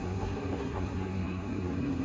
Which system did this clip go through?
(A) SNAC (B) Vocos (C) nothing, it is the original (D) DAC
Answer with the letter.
A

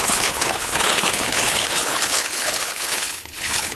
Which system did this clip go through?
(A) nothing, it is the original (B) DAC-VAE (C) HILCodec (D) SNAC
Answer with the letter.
C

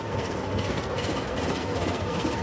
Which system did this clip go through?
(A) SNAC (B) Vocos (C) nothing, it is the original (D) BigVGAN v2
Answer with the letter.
A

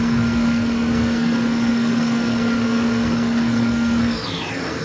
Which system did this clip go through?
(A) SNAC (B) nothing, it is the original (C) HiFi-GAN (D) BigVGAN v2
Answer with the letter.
A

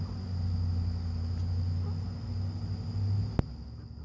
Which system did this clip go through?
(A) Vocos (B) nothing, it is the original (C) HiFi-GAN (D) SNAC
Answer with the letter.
B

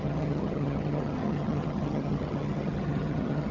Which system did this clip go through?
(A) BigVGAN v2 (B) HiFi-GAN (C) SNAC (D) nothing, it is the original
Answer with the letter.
B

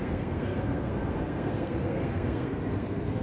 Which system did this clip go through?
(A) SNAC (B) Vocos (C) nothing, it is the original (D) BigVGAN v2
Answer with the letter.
A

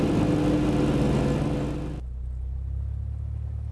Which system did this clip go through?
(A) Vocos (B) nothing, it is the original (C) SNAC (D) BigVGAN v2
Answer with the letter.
B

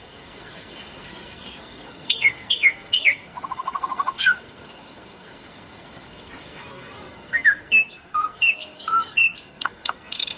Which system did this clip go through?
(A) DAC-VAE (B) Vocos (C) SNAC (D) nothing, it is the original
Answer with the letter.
C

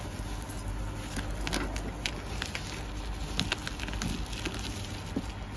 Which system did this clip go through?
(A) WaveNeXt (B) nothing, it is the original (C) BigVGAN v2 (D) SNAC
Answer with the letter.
B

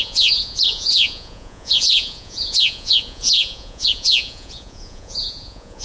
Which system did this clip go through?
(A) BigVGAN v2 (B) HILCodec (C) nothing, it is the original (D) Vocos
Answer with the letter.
D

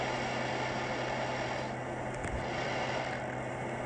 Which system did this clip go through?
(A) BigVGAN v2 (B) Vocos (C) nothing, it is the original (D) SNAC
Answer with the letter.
C